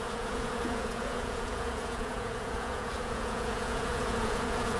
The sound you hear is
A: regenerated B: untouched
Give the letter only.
A